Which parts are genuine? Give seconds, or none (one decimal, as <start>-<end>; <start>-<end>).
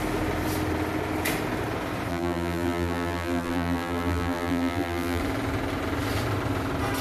0.0-2.1; 5.2-7.0